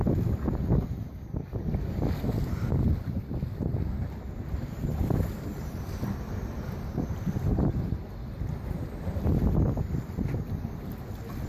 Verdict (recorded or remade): recorded